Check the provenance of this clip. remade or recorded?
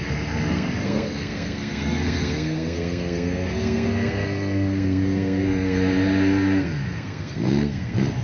remade